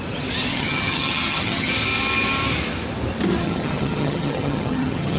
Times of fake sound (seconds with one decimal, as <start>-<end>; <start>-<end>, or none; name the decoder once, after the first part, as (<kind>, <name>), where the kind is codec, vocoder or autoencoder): 0.5-1.7 (vocoder, HiFi-GAN); 3.4-5.2